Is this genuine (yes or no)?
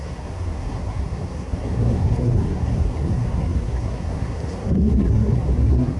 no